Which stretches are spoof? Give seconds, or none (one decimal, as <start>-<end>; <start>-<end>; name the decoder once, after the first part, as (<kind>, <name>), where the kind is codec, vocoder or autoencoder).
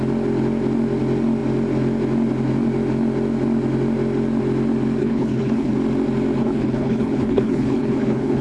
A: 5.0-5.7 (codec, HILCodec); 6.4-8.4